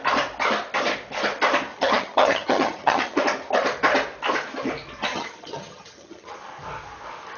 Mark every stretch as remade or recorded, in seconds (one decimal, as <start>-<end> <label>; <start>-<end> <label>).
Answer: 0.0-1.7 recorded; 1.7-3.2 remade; 3.2-5.1 recorded; 5.1-6.3 remade; 6.3-7.4 recorded